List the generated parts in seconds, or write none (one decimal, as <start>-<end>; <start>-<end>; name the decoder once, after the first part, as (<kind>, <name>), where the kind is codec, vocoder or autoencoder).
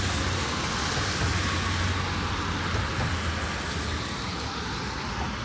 none